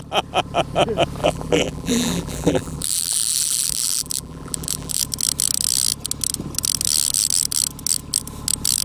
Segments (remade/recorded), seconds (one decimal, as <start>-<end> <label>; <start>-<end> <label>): 0.0-1.2 recorded; 1.2-5.0 remade; 5.0-8.8 recorded